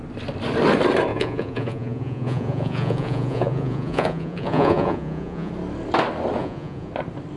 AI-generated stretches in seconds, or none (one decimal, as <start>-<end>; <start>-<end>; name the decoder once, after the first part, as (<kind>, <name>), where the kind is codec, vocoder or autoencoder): 1.1-5.5 (vocoder, Vocos); 6.4-6.9